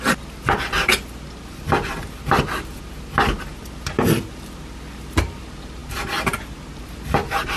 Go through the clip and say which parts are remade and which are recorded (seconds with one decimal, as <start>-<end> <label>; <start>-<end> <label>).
0.0-7.6 recorded